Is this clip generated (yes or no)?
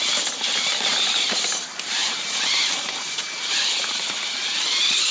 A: yes